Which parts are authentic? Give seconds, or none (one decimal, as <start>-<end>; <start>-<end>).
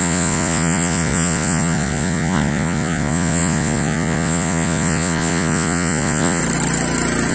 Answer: 6.4-7.3